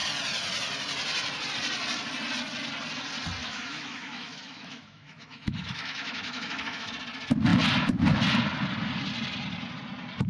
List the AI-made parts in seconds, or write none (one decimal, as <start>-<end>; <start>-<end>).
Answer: 3.4-6.9